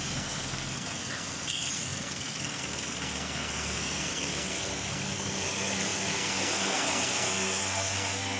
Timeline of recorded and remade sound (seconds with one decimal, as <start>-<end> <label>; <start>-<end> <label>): 0.0-8.4 remade